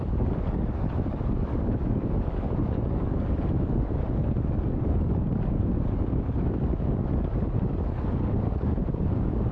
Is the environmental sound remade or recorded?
remade